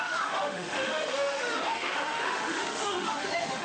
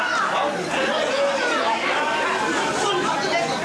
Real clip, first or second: second